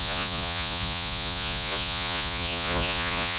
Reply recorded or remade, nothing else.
remade